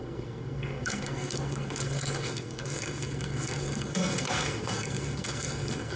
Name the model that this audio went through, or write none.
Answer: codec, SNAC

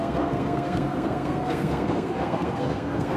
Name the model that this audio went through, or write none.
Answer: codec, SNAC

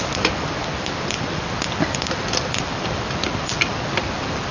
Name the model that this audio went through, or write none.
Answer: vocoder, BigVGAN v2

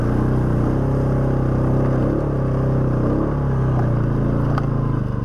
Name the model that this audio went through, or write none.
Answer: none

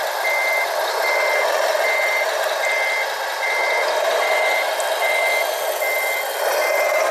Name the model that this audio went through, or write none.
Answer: none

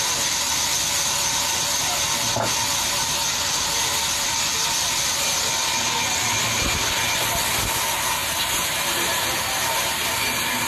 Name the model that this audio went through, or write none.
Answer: none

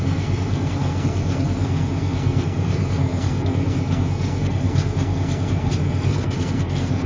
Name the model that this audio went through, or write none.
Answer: codec, SNAC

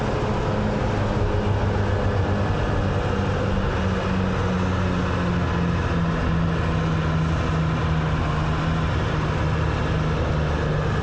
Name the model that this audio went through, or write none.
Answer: none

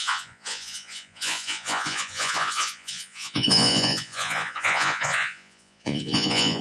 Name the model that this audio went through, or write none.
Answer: vocoder, Vocos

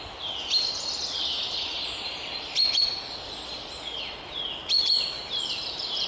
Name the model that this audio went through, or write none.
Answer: vocoder, BigVGAN v2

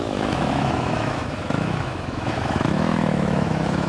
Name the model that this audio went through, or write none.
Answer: autoencoder, DAC-VAE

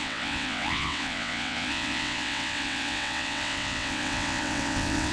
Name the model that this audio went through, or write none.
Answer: vocoder, WaveNeXt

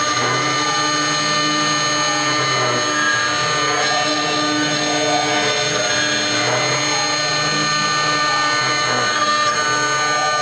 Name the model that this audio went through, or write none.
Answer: none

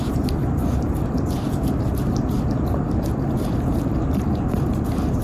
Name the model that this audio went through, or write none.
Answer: vocoder, BigVGAN v2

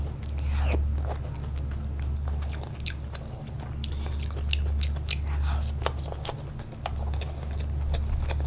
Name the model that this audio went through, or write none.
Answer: none